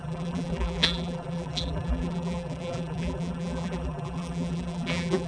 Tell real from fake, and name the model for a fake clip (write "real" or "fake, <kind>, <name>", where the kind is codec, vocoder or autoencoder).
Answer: fake, vocoder, BigVGAN v2